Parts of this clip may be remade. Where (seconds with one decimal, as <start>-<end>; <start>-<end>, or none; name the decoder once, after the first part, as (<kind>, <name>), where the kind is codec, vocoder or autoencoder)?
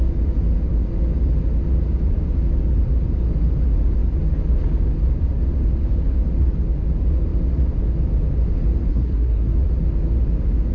8.9-9.5 (codec, SNAC)